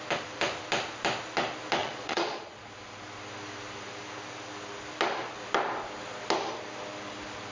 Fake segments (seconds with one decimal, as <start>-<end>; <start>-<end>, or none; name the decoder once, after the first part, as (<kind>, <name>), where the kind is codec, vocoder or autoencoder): 1.8-2.7 (vocoder, Vocos)